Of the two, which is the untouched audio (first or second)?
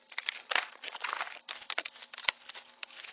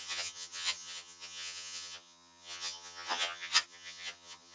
first